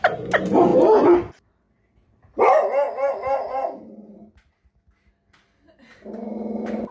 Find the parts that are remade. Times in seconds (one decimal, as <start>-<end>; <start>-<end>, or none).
none